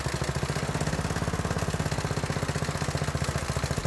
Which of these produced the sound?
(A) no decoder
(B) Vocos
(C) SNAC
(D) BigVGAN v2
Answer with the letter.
A